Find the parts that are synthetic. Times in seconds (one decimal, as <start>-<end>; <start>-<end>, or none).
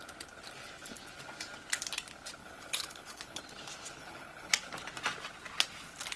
2.4-3.4; 4.0-4.5